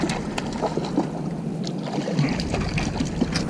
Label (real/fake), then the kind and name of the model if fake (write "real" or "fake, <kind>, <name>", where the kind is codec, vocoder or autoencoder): real